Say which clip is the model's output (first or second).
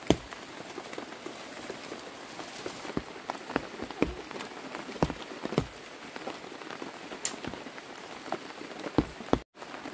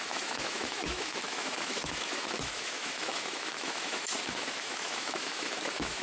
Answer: second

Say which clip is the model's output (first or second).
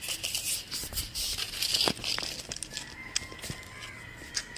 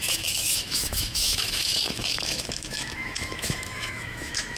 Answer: second